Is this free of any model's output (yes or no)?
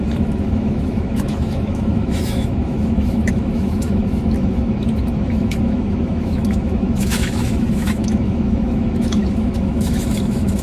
no